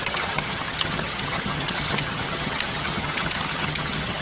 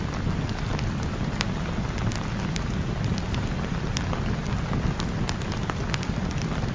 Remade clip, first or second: first